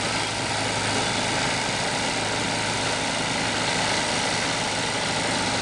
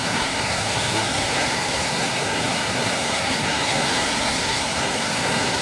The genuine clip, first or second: first